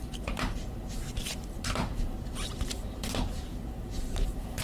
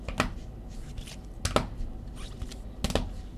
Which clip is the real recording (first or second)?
second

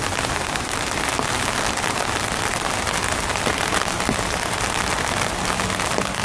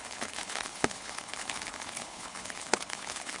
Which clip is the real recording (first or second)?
first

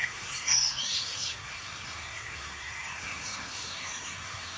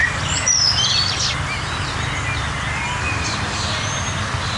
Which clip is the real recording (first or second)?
second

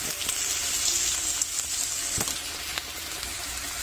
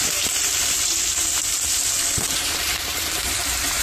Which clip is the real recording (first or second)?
first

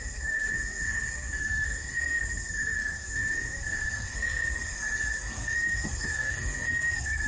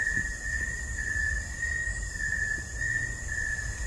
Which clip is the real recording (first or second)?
second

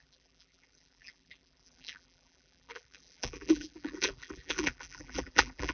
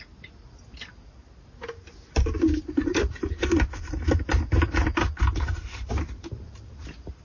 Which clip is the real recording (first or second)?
second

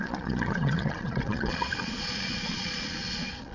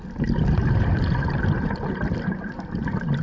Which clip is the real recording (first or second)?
second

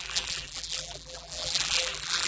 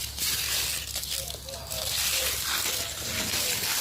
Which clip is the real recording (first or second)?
second